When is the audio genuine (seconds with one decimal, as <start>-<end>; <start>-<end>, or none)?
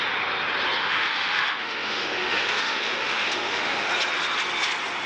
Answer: 0.0-0.8; 3.9-5.1